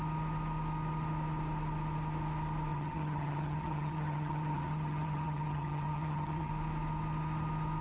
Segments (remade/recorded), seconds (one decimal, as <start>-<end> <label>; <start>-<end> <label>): 0.0-2.7 recorded; 2.7-6.5 remade; 6.5-7.8 recorded